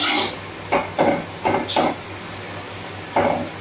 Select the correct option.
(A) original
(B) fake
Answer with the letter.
A